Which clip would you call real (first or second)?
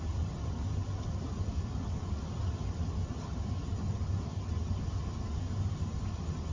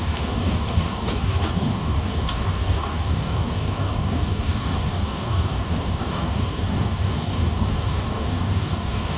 first